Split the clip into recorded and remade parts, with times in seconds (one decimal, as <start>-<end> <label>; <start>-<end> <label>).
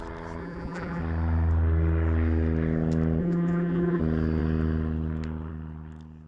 0.0-0.4 recorded; 0.4-1.0 remade; 1.0-3.2 recorded; 3.2-4.0 remade; 4.0-6.3 recorded